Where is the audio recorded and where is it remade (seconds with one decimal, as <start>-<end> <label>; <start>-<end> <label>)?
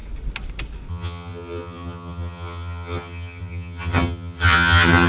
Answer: 0.0-0.9 recorded; 0.9-5.1 remade